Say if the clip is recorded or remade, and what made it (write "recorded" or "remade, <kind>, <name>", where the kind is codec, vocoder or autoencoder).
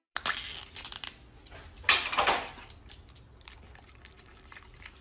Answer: recorded